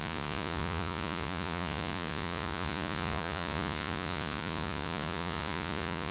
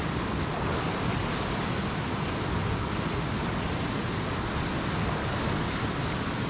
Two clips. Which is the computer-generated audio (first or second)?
first